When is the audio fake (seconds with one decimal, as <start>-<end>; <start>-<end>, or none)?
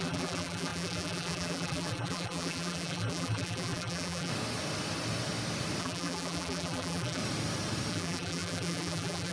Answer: 0.0-4.3; 5.8-7.2; 7.9-9.3